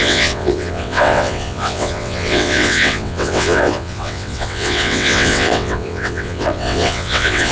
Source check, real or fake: fake